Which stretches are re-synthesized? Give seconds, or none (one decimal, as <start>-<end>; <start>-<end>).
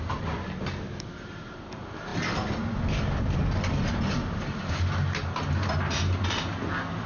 none